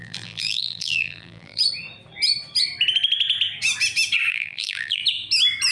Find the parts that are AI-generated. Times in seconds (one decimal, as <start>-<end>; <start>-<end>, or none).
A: 0.0-1.6; 4.3-5.0